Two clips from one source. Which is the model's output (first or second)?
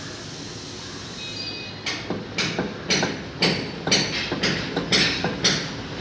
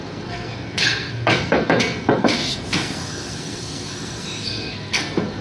second